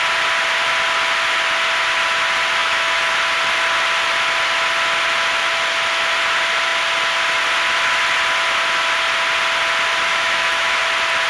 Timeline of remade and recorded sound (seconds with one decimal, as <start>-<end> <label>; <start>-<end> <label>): 0.0-2.6 recorded; 2.6-3.1 remade; 3.1-10.1 recorded; 10.1-10.8 remade; 10.8-11.3 recorded